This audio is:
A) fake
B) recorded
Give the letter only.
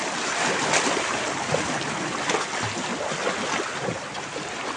B